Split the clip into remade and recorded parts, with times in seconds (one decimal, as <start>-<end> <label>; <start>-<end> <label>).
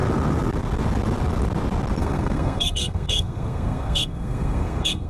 0.0-2.0 recorded; 2.0-5.1 remade